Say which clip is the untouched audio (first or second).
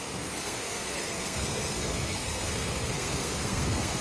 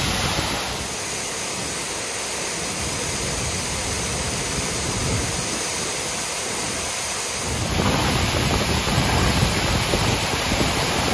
second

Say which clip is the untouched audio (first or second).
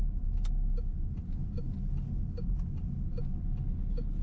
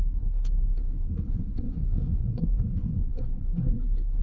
first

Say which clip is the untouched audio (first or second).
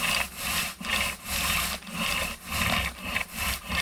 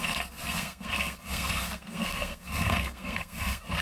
first